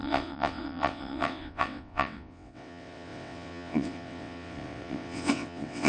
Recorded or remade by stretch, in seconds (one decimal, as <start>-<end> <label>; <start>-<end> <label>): 0.0-5.9 remade